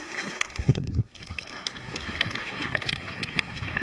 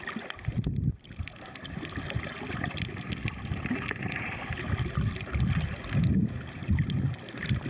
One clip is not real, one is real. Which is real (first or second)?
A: second